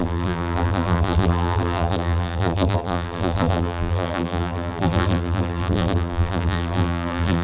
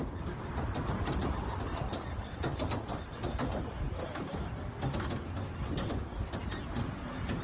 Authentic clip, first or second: second